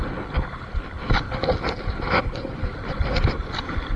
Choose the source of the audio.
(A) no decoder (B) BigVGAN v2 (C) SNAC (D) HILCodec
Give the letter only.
A